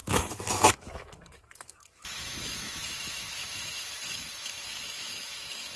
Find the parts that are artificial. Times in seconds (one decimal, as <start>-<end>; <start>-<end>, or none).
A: 0.0-5.8